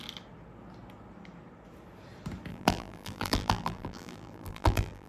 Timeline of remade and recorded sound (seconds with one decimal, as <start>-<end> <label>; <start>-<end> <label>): 0.0-2.5 recorded; 2.5-5.1 remade